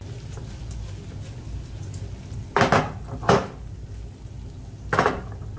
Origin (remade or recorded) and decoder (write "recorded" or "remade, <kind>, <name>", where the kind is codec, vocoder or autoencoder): recorded